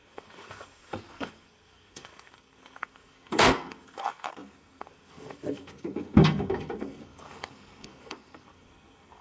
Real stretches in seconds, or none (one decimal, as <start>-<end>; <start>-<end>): none